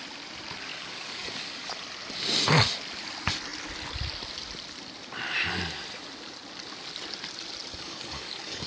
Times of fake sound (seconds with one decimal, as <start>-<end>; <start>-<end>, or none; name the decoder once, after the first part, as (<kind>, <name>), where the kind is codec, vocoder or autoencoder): 0.7-1.7 (codec, DAC); 7.7-8.7